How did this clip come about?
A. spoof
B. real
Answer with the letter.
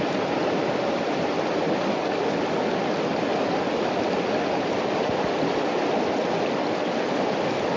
B